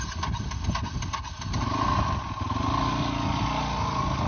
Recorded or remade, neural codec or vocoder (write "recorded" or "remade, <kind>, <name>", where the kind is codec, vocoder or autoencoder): recorded